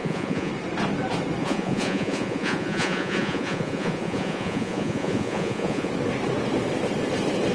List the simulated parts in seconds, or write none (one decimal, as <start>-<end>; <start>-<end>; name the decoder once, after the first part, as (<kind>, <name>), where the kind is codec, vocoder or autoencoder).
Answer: 0.0-0.5 (vocoder, Vocos); 1.4-5.9